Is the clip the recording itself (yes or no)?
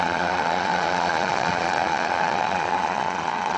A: no